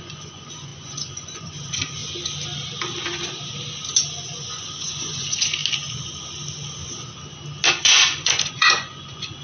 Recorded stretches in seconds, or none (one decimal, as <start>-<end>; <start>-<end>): 2.0-4.1; 5.6-7.7